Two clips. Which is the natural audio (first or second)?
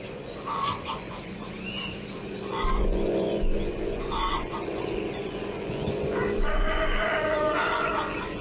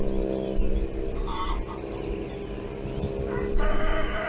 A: second